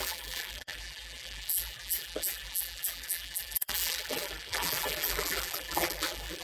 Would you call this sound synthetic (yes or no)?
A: yes